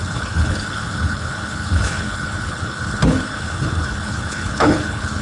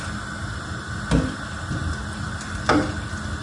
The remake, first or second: first